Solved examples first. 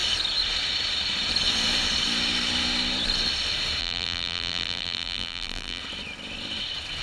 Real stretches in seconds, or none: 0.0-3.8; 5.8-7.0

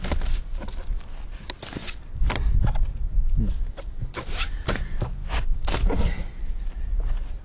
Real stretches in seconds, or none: 0.0-5.2; 6.0-7.4

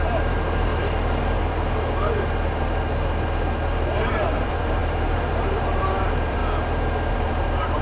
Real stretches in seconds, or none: 0.7-4.1; 6.4-7.1

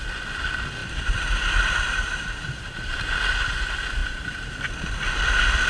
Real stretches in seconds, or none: 0.0-0.8; 2.9-4.0; 4.6-5.7

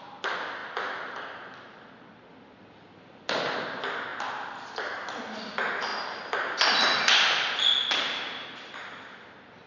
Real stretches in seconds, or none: 0.0-9.7

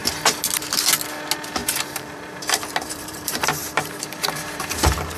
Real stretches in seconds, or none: 0.0-1.6; 4.7-5.2

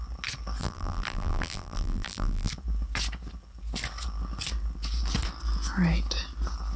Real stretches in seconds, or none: 0.0-0.6; 2.5-6.8

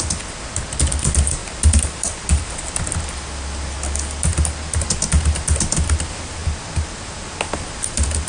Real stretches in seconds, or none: 0.0-1.4; 3.0-8.3